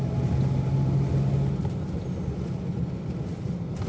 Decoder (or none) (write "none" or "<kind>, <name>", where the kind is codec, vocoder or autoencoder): none